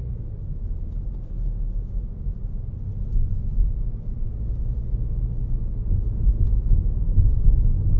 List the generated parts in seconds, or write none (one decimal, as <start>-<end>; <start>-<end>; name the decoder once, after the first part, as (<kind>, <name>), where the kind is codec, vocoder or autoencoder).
2.4-2.9 (vocoder, BigVGAN v2)